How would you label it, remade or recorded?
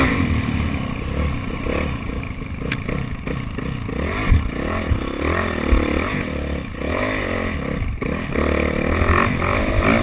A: recorded